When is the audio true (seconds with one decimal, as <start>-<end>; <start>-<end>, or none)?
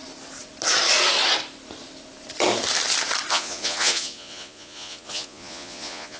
0.0-3.3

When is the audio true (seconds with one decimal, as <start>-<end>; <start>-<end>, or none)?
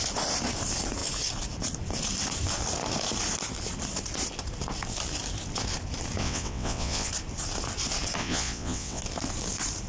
0.0-6.2; 7.1-8.2; 9.0-9.9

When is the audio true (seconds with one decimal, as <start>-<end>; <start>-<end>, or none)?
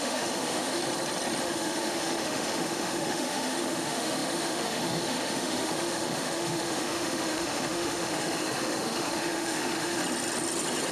0.8-1.4; 10.0-10.9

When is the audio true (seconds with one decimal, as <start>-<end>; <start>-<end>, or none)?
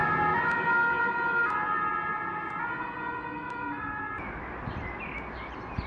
0.0-5.9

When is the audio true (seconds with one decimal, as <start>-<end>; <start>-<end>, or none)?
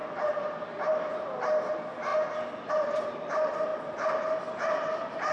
0.0-5.3